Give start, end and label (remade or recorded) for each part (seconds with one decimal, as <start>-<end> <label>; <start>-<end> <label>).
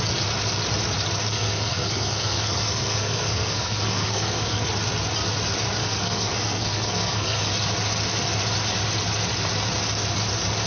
0.0-1.3 recorded; 1.3-4.7 remade; 4.7-5.8 recorded; 5.8-7.5 remade; 7.5-10.7 recorded